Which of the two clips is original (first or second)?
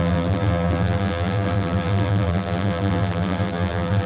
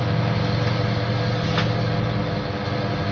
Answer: second